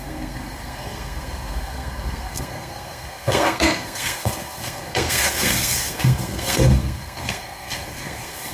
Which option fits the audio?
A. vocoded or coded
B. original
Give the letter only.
A